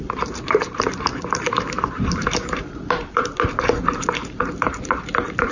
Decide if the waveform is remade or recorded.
remade